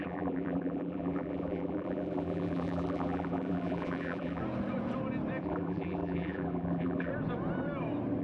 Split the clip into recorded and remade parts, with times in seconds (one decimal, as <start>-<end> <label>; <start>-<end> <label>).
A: 0.0-4.4 remade; 4.4-5.4 recorded; 5.4-7.1 remade; 7.1-8.2 recorded